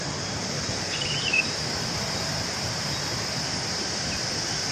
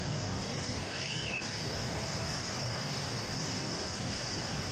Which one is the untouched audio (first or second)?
first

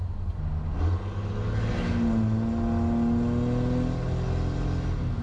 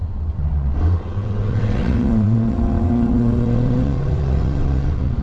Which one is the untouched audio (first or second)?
first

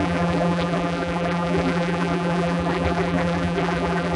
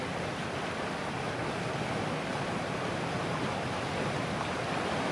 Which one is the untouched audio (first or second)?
second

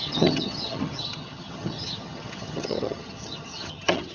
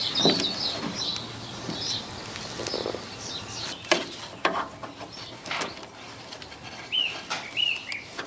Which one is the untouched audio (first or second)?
second